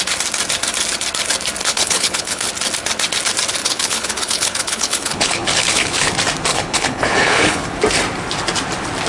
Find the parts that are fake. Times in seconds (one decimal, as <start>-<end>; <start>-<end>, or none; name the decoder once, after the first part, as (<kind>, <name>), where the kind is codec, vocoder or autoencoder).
1.6-2.5 (codec, HILCodec); 3.6-6.1; 6.5-7.8